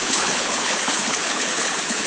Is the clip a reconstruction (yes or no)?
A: yes